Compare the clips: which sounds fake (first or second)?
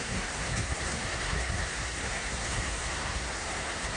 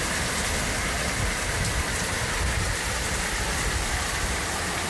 first